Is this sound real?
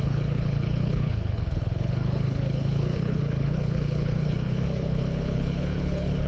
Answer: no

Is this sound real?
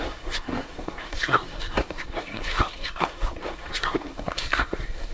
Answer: no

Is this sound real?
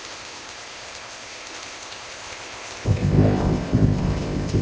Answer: no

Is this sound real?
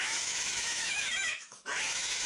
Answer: no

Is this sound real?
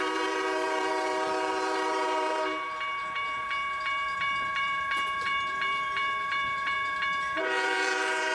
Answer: no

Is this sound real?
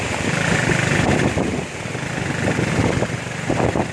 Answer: yes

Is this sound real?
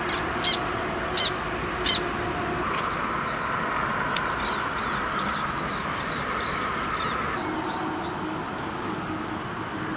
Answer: yes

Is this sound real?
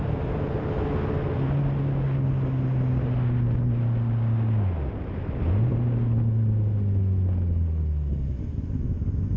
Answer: yes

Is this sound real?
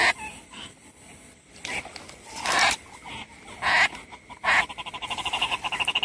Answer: yes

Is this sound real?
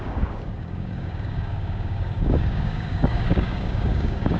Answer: no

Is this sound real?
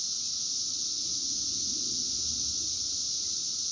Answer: yes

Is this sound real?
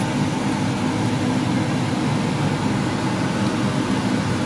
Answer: yes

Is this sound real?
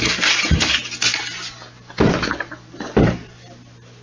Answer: yes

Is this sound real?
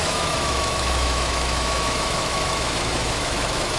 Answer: no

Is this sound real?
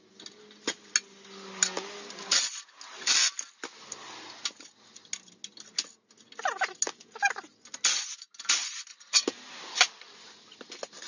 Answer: yes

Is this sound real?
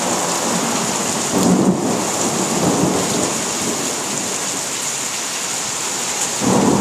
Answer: yes